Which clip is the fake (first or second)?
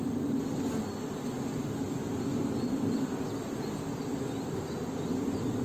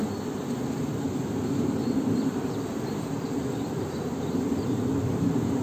second